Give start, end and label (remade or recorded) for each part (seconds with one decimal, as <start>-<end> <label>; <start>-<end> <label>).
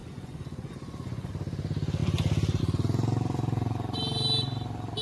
0.0-1.3 remade; 1.3-5.0 recorded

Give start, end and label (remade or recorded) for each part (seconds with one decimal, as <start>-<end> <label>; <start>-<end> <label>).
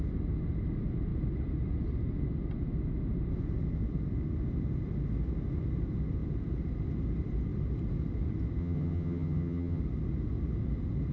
0.0-8.6 recorded; 8.6-9.8 remade; 9.8-11.1 recorded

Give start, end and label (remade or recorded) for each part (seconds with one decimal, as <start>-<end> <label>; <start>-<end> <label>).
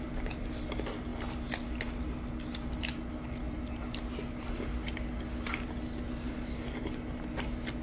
0.0-7.8 recorded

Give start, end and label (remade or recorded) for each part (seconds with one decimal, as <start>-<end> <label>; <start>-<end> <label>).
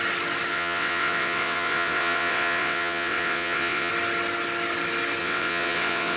0.0-0.5 recorded; 0.5-3.9 remade; 3.9-5.2 recorded; 5.2-6.2 remade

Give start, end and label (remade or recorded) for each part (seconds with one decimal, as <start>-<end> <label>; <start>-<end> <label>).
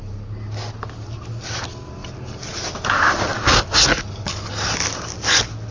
0.0-5.7 recorded